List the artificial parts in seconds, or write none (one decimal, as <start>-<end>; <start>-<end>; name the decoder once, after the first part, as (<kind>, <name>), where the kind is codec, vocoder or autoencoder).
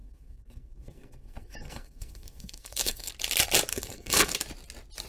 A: 0.0-3.1 (codec, SNAC); 3.7-4.3